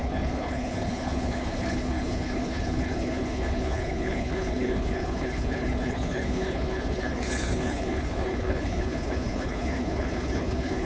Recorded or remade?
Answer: remade